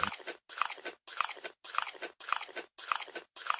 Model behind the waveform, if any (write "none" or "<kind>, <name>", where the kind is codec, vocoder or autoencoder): none